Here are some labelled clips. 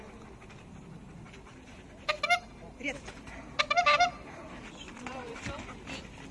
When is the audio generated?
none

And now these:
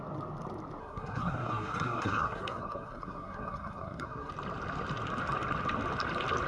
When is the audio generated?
0.8-4.3 (codec, SNAC)

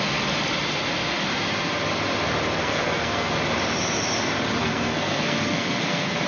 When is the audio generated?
2.6-3.3 (codec, SNAC); 4.6-6.3

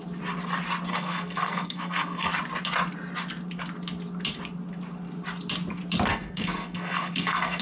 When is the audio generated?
0.9-2.3 (codec, SNAC); 6.1-7.6

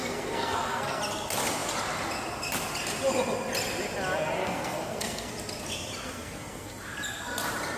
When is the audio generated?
0.0-1.0 (codec, SNAC); 4.4-5.3; 6.0-6.7

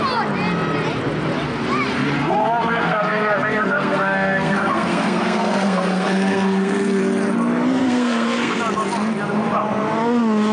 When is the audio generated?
2.2-7.0 (codec, SNAC); 7.8-8.6